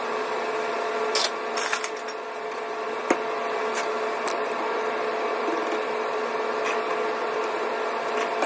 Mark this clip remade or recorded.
recorded